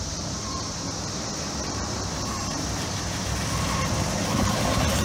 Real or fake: fake